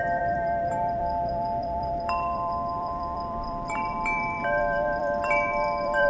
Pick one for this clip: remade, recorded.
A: remade